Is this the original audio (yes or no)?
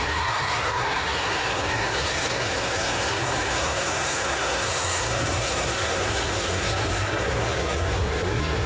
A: no